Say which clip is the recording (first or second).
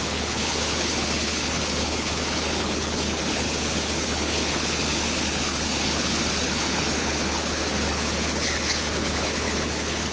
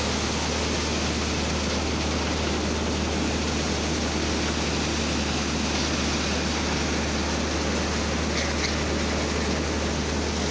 second